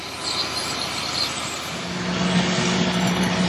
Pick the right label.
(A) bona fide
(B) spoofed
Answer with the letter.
A